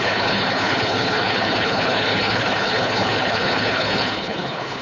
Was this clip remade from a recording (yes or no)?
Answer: yes